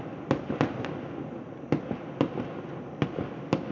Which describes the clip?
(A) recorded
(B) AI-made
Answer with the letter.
A